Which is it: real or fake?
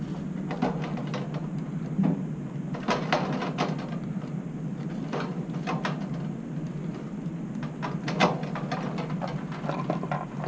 real